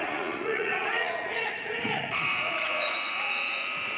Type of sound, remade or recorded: remade